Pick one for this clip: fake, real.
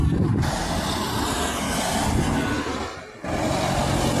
real